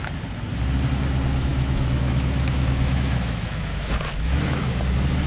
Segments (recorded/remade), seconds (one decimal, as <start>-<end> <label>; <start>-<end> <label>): 0.0-1.5 recorded; 1.5-4.7 remade; 4.7-5.3 recorded